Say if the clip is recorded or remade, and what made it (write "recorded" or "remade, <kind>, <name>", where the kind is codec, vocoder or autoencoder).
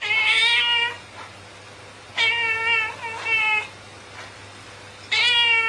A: recorded